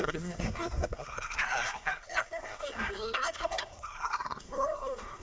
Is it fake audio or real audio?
fake